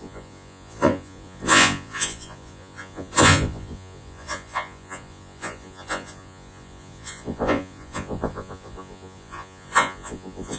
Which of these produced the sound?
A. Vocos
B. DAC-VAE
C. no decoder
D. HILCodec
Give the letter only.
A